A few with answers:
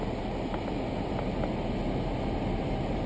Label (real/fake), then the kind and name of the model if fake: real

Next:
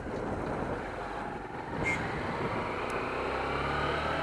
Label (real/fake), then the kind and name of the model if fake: real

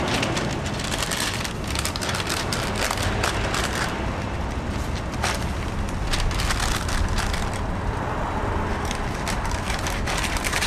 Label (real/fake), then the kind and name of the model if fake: real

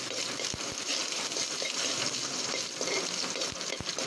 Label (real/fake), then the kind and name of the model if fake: real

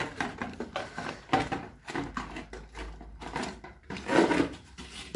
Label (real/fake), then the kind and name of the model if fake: real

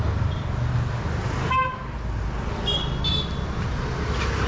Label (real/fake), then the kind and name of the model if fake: real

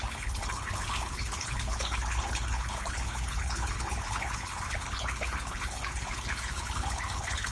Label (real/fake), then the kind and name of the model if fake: fake, codec, HILCodec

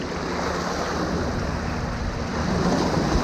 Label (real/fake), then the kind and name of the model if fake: real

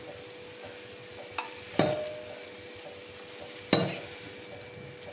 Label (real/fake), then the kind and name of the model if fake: real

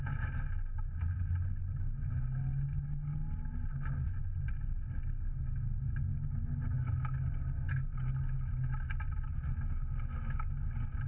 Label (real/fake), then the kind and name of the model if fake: real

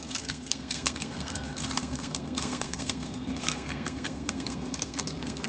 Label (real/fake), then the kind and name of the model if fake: fake, codec, SNAC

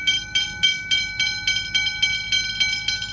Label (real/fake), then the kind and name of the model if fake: real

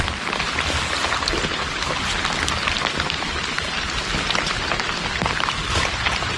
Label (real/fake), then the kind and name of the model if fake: real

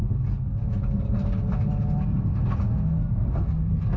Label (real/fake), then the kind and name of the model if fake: real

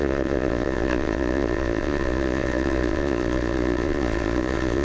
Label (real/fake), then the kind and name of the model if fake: fake, vocoder, Vocos